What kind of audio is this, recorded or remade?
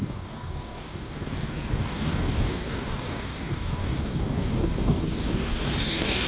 remade